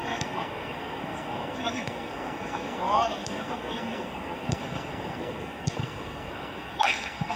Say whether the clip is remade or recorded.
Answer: remade